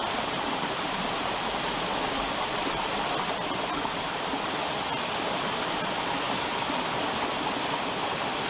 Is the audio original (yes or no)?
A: yes